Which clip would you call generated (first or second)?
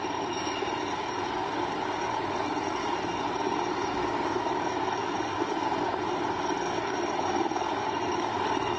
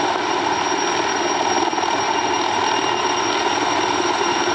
first